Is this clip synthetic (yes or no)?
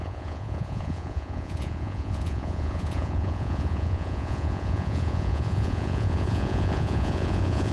yes